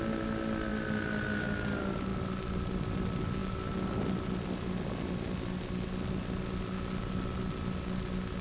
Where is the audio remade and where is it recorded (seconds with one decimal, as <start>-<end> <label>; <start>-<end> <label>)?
0.0-8.4 recorded